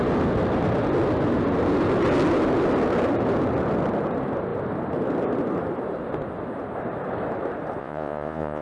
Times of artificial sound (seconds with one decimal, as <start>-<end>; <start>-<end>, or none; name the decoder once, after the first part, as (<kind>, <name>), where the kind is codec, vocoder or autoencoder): 7.8-8.6 (vocoder, Vocos)